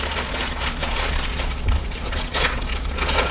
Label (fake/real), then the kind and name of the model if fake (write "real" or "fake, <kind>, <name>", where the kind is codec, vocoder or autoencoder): fake, vocoder, Vocos